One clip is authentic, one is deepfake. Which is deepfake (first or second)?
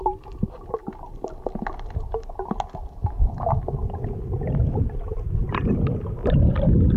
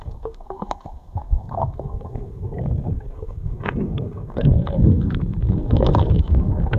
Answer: second